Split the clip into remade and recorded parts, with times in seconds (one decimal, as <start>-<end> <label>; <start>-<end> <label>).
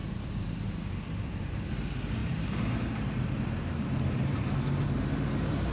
0.0-1.7 remade; 1.7-2.2 recorded; 2.2-4.5 remade; 4.5-5.7 recorded